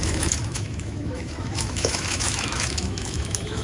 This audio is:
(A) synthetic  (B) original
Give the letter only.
A